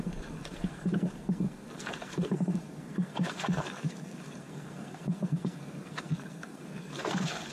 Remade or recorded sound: remade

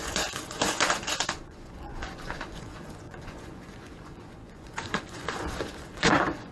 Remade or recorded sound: remade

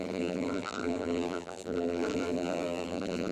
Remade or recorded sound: remade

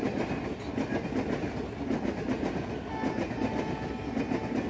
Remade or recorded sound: recorded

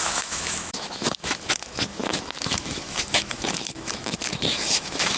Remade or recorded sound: remade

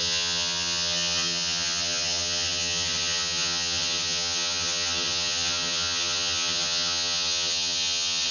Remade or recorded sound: remade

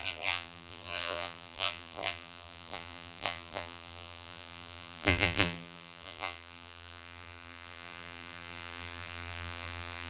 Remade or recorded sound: remade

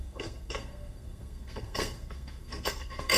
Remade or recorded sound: remade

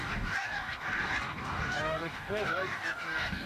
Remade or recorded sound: remade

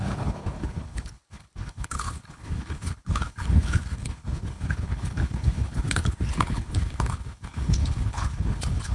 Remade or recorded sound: remade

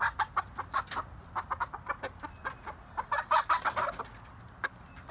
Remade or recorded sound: recorded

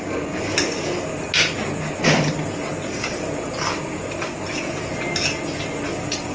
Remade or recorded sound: recorded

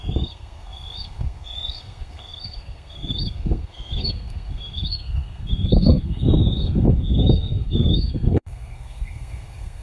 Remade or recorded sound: remade